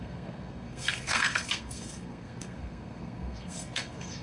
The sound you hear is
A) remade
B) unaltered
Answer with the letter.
A